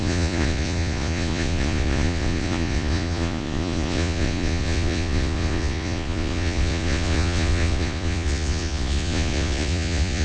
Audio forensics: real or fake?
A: fake